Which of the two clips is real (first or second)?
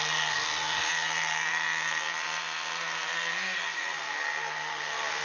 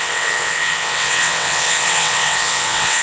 first